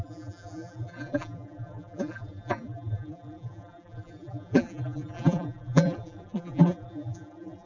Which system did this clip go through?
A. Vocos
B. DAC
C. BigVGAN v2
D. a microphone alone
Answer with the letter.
C